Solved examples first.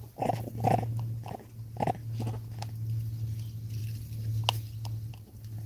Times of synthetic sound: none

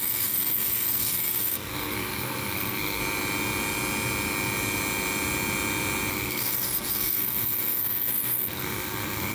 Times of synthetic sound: 0.0-3.0 (codec, SNAC); 6.1-9.3

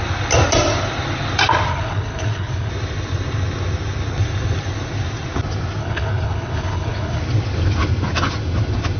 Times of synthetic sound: 1.7-2.7 (codec, HILCodec); 5.8-7.2

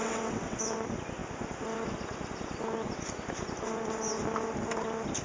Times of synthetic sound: 0.0-0.6 (vocoder, WaveNeXt)

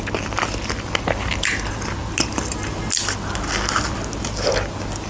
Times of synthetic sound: none